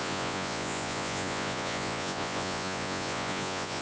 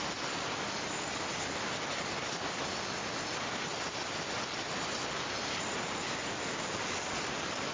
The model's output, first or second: first